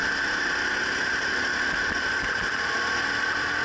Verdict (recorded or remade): recorded